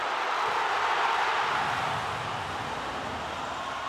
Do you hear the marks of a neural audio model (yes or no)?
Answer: no